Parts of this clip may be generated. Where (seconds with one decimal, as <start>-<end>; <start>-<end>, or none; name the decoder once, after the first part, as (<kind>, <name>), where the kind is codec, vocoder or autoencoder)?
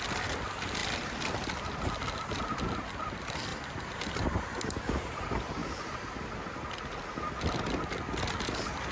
3.5-4.7 (vocoder, BigVGAN v2)